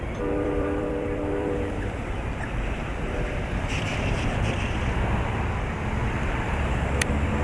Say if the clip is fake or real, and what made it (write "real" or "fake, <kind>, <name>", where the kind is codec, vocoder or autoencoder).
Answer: fake, vocoder, BigVGAN v2